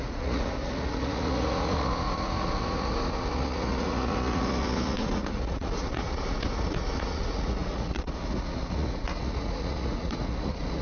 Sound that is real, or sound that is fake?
fake